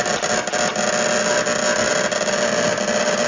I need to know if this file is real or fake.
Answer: real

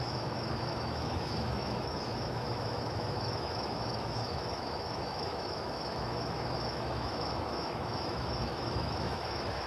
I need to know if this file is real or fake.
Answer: fake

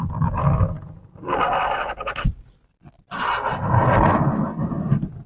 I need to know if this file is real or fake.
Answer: real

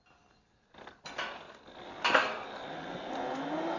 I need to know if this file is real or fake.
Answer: real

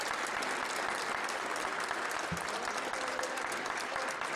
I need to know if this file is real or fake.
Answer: real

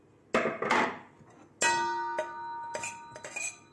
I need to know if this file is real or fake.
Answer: real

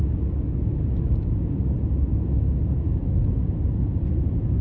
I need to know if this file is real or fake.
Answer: real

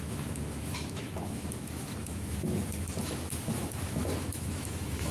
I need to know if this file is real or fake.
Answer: fake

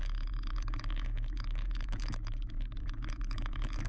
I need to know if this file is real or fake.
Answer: fake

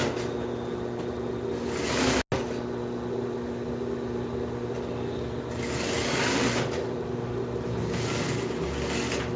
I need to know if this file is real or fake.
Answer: real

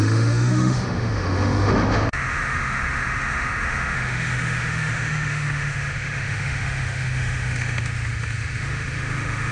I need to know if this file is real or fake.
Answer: fake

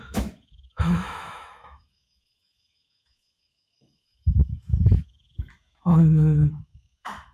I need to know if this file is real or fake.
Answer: fake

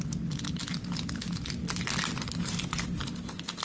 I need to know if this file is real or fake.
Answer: real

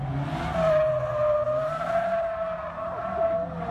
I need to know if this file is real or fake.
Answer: real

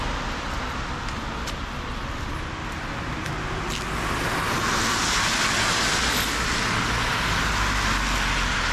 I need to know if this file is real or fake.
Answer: real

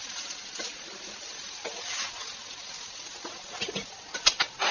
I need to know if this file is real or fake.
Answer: real